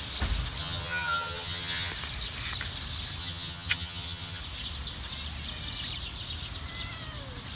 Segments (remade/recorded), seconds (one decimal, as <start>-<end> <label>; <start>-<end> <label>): 0.0-0.6 recorded; 0.6-1.9 remade; 1.9-3.2 recorded; 3.2-4.4 remade; 4.4-7.6 recorded